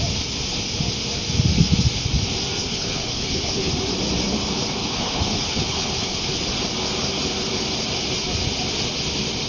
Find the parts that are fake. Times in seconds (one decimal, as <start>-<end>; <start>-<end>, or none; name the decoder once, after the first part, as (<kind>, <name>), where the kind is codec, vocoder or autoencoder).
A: 2.6-3.7 (codec, HILCodec); 4.8-6.4